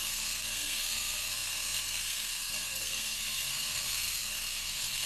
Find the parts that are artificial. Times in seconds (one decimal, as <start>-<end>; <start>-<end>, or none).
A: 0.0-5.1